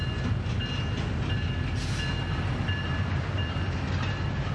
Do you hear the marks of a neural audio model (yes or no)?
no